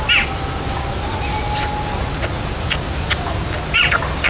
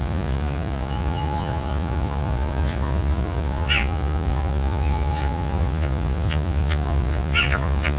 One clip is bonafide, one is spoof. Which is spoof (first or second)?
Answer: second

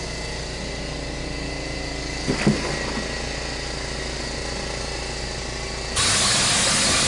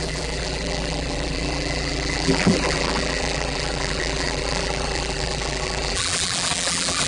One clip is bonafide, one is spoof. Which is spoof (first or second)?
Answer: second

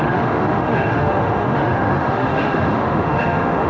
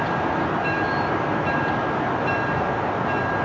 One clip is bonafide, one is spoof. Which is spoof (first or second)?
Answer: first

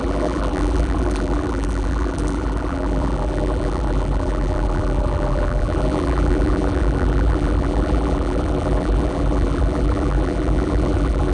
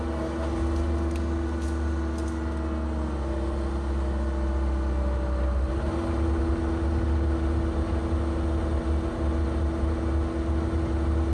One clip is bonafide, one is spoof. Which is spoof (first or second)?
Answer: first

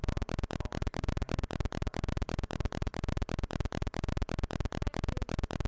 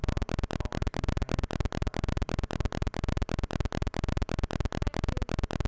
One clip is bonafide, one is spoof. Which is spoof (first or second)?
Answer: first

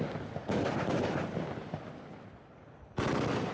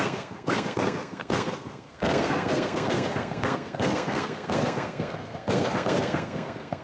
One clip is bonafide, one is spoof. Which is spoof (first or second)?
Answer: second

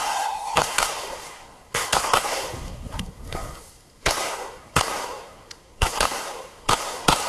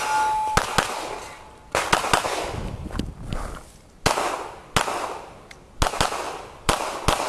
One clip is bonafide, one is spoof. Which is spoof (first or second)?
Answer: first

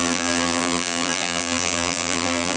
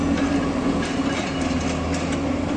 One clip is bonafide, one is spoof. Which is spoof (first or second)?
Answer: first